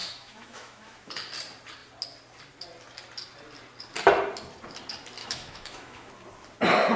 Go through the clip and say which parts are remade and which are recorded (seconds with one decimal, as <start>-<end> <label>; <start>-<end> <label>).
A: 0.0-1.1 remade; 1.1-5.2 recorded; 5.2-6.1 remade; 6.1-7.0 recorded